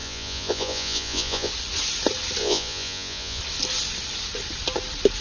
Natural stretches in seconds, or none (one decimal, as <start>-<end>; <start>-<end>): 1.5-2.4; 3.4-5.2